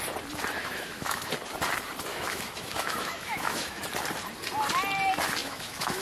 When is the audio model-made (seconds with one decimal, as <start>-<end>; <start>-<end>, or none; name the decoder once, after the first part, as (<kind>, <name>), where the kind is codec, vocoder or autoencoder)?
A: 0.6-1.3 (autoencoder, DAC-VAE); 2.1-3.8; 5.4-6.0